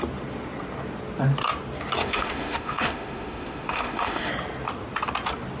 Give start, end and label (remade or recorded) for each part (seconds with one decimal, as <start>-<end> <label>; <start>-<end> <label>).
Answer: 0.0-2.0 recorded; 2.0-4.3 remade; 4.3-5.6 recorded